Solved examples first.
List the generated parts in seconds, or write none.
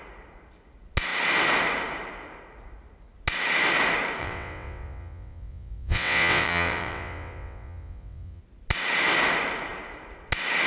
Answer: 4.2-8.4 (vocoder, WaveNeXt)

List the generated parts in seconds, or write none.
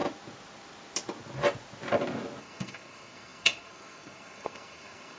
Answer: 2.4-5.2 (codec, SNAC)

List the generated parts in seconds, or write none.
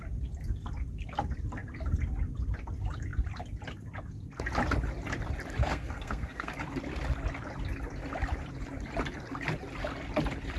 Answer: 5.6-6.5 (codec, SNAC)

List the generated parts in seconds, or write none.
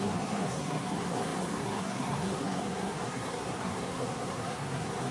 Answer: 0.0-5.1 (codec, SNAC)